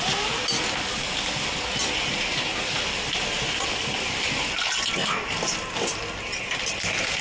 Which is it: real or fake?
real